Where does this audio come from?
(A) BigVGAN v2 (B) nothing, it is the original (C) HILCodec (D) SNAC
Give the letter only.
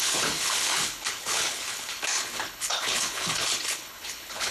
C